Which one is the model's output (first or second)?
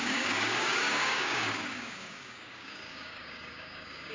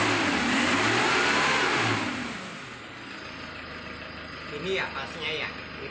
first